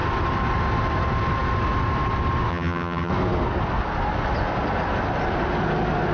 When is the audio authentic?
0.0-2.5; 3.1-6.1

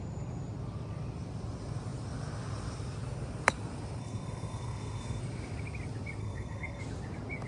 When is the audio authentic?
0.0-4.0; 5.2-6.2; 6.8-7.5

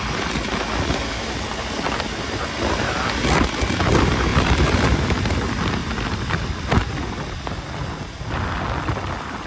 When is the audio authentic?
0.0-4.3; 5.2-5.8; 8.6-9.5

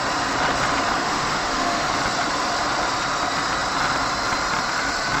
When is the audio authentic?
0.0-1.0; 1.9-5.2

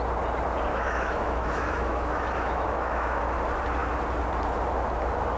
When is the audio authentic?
0.0-0.7; 3.2-5.4

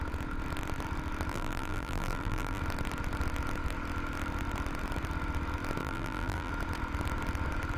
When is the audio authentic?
0.0-1.3; 2.6-5.8; 6.5-7.8